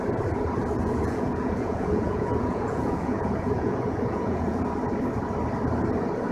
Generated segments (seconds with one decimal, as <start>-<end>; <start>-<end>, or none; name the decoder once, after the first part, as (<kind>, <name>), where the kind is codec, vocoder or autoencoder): 0.8-4.6 (vocoder, Vocos)